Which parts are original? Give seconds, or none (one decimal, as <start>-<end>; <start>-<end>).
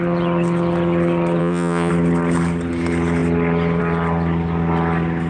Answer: 0.0-1.4; 1.9-5.3